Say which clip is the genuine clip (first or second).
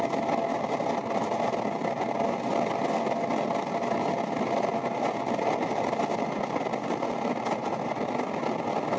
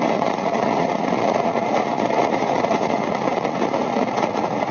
first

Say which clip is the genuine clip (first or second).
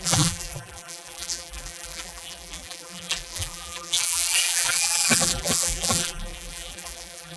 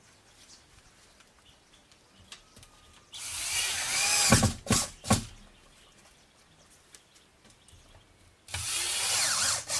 second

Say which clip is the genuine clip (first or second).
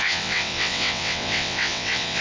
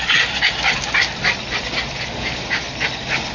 second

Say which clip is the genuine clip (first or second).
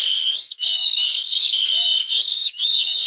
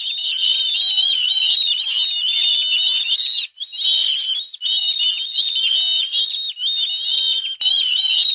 second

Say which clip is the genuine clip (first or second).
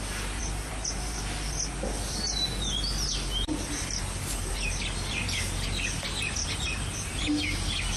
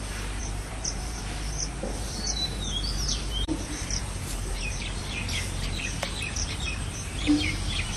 first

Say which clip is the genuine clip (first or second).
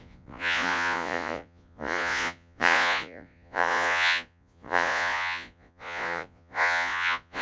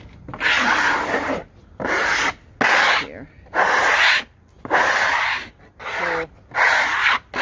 second